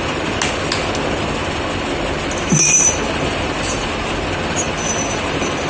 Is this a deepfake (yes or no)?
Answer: no